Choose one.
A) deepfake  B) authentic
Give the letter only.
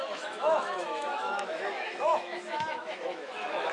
A